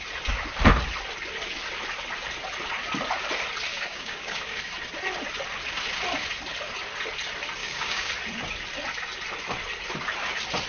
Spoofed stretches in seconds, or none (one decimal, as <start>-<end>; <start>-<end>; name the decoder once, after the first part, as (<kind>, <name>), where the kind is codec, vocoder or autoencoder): 3.7-4.6 (codec, DAC); 7.6-8.1